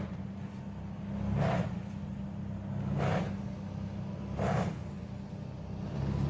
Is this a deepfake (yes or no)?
no